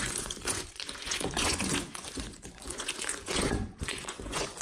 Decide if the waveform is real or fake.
fake